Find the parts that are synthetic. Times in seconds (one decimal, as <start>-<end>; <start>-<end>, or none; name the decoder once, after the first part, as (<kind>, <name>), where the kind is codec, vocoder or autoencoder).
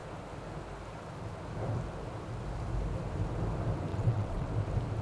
3.9-4.5 (vocoder, WaveNeXt)